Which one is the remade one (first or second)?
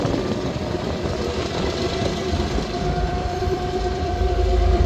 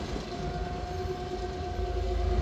first